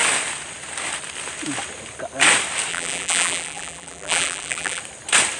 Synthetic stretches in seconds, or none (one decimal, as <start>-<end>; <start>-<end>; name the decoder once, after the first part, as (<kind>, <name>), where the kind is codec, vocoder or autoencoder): 2.7-4.8 (vocoder, BigVGAN v2)